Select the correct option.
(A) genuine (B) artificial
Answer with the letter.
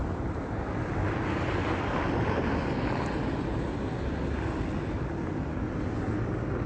A